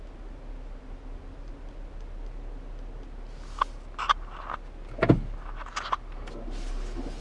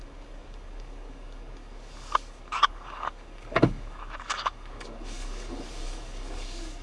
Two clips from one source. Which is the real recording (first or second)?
first